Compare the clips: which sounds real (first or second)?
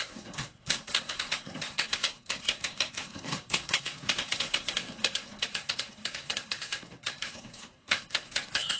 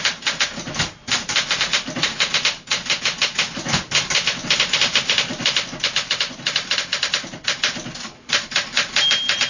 second